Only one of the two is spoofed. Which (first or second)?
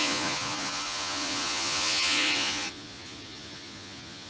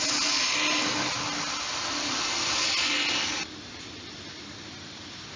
first